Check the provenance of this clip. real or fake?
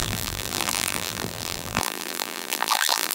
fake